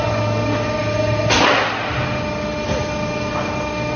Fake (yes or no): no